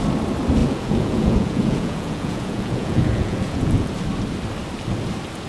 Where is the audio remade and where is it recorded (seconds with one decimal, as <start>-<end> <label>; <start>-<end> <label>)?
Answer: 0.0-0.6 recorded; 0.6-3.9 remade; 3.9-5.5 recorded